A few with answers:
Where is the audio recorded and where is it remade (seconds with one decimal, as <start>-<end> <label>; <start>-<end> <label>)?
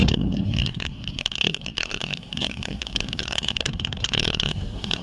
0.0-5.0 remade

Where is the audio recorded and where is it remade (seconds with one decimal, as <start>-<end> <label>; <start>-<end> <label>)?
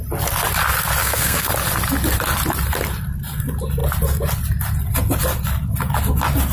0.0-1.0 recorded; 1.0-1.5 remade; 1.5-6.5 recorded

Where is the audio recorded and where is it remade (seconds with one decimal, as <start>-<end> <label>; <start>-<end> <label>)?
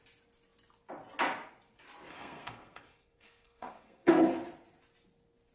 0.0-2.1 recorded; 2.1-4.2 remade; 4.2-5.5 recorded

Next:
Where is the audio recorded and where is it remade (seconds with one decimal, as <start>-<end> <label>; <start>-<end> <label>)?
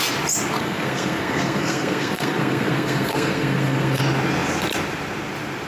0.0-0.6 recorded; 0.6-4.0 remade; 4.0-5.7 recorded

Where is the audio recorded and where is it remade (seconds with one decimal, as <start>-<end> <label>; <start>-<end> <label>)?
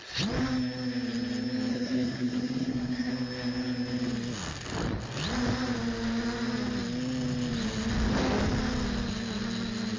0.0-1.7 recorded; 1.7-3.1 remade; 3.1-10.0 recorded